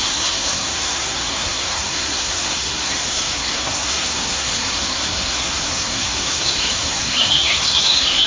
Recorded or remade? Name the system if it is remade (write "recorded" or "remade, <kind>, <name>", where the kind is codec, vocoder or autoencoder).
remade, codec, SNAC